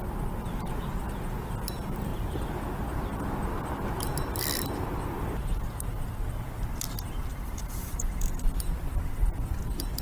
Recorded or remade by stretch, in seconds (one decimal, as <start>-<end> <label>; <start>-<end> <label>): 0.0-7.3 recorded; 7.3-8.6 remade; 8.6-10.0 recorded